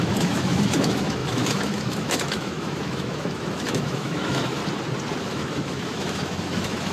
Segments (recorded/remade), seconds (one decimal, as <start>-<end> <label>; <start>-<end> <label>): 0.0-4.6 remade; 4.6-5.2 recorded; 5.2-6.9 remade